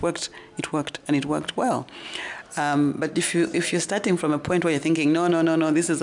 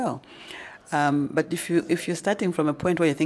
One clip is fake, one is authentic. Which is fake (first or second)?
second